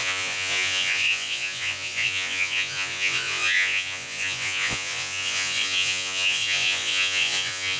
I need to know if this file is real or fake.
fake